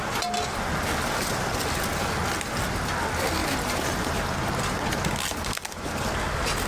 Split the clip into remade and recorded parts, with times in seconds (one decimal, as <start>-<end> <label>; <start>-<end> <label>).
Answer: 0.0-6.7 recorded